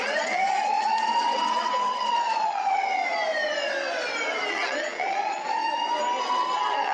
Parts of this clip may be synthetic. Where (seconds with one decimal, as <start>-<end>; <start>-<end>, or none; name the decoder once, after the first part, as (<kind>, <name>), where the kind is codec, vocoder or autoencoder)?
0.0-3.0 (vocoder, WaveNeXt); 4.5-5.6; 6.2-6.9